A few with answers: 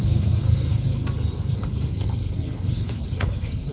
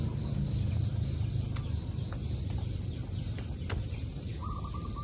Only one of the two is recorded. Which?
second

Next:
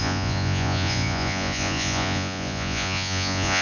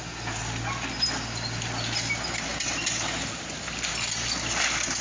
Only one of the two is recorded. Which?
second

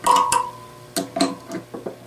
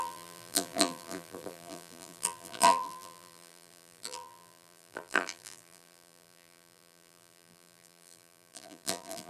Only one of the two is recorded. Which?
first